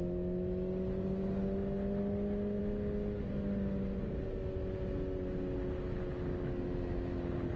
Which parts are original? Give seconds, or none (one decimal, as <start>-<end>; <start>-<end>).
0.0-7.6

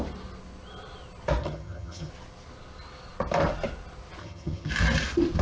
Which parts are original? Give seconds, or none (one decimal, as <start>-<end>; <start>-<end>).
0.0-1.4; 2.1-4.2; 4.7-5.4

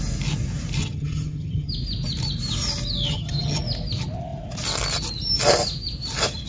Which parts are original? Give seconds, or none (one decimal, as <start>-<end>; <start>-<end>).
0.0-0.8; 1.7-3.1; 3.6-6.5

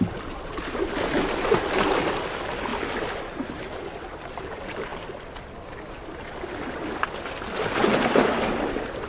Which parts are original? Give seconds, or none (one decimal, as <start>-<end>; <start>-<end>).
0.0-9.1